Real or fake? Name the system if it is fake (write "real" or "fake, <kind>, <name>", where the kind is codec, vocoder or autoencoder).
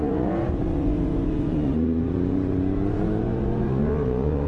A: fake, vocoder, Vocos